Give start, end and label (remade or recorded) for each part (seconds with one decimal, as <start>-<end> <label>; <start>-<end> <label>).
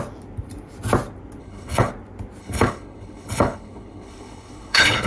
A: 0.0-1.4 recorded; 1.4-1.9 remade; 1.9-2.4 recorded; 2.4-5.1 remade